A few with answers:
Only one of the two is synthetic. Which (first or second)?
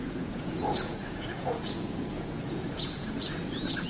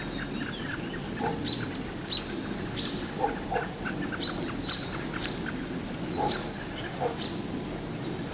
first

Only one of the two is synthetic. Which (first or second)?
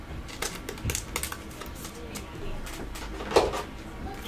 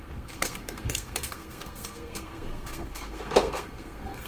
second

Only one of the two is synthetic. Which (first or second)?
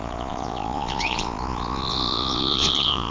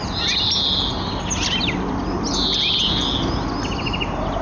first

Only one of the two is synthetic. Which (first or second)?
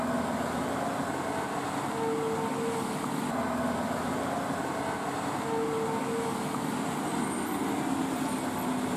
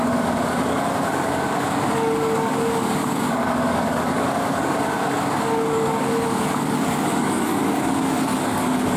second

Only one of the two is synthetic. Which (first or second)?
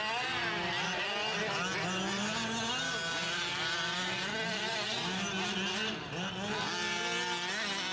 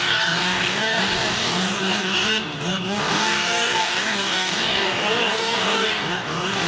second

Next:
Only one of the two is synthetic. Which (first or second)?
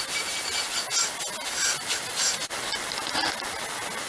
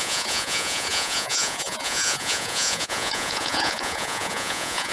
second